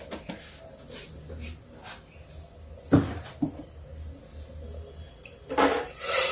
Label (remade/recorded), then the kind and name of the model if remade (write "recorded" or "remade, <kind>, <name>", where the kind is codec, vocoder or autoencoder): recorded